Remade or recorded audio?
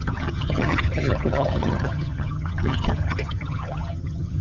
remade